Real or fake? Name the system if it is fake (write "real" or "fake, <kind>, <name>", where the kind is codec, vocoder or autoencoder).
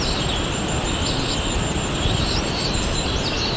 real